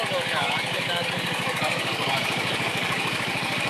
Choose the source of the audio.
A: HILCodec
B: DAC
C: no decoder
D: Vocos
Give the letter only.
B